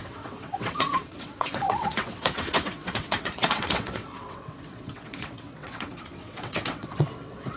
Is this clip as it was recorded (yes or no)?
no